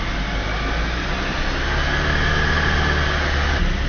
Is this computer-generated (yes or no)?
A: no